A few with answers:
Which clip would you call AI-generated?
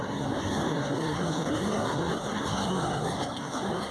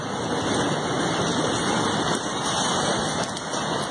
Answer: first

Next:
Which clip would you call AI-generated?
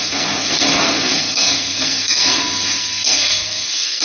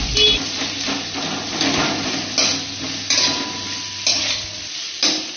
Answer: first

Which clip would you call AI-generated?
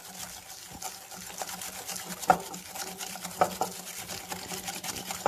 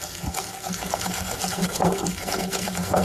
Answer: second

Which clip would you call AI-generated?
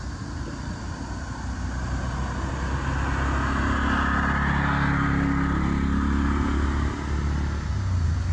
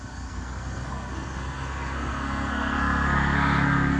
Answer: second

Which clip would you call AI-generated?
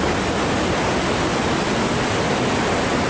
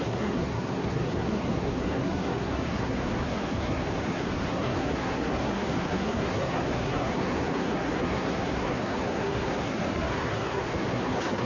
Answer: second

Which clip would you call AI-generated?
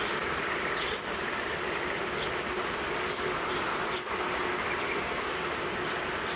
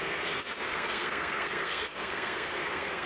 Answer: second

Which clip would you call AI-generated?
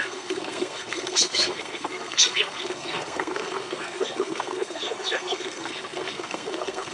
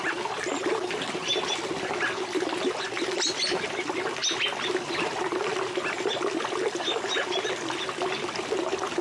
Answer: first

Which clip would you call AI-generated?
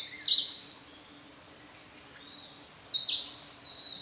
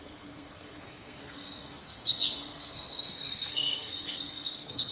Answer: second